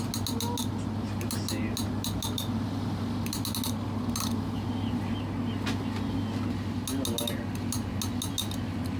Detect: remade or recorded recorded